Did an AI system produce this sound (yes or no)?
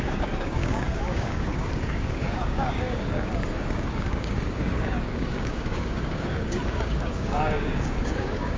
yes